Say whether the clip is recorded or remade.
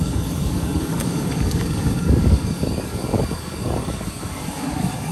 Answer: remade